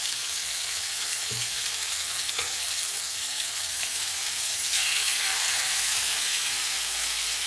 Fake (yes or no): yes